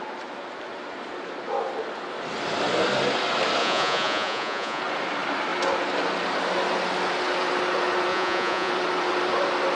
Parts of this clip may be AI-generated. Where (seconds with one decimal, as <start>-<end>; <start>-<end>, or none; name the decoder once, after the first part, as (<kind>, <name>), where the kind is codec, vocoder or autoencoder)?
3.6-4.8 (vocoder, Vocos); 8.1-8.7